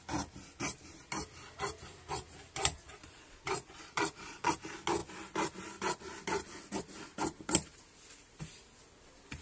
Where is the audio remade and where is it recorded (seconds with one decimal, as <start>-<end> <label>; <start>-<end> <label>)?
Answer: 0.0-2.8 recorded; 2.8-4.5 remade; 4.5-9.4 recorded

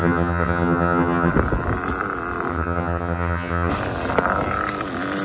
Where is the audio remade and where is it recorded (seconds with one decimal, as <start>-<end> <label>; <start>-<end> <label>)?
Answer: 0.0-1.3 remade; 1.3-2.5 recorded; 2.5-3.7 remade; 3.7-5.2 recorded